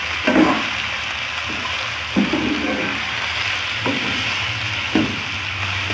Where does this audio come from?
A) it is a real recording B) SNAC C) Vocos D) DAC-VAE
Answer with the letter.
A